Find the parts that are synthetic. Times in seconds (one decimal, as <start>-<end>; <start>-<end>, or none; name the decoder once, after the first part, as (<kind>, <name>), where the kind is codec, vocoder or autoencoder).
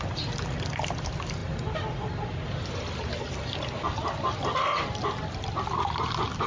none